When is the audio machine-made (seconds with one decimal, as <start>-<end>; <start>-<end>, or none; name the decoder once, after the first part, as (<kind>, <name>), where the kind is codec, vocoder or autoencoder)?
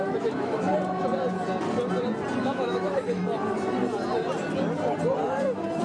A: 0.0-0.7 (autoencoder, DAC-VAE); 2.4-3.2